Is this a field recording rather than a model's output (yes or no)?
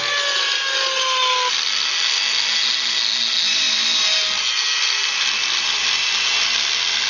yes